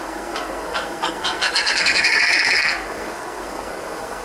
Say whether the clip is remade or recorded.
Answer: remade